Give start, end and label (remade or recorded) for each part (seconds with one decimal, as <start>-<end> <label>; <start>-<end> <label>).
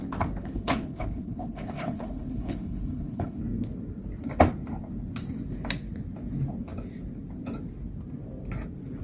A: 0.0-0.4 recorded; 0.4-3.4 remade; 3.4-9.0 recorded